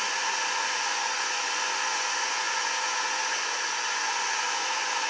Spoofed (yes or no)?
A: yes